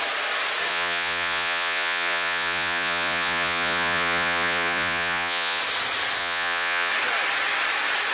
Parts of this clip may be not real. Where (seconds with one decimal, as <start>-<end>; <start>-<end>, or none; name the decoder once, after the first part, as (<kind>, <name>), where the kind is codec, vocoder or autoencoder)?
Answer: 0.7-5.6 (vocoder, Vocos); 6.2-6.9